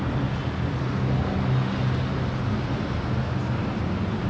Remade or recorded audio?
recorded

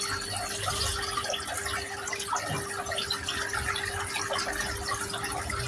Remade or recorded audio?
recorded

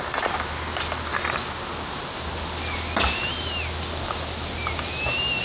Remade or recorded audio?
recorded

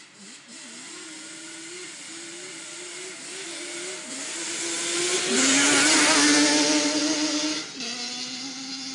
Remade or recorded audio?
recorded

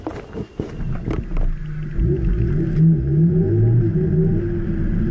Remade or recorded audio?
recorded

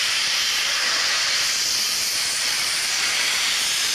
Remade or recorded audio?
remade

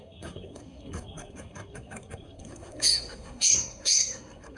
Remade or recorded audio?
remade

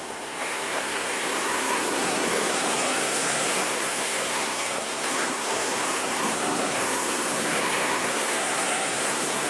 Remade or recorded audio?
remade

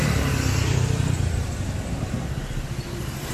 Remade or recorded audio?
recorded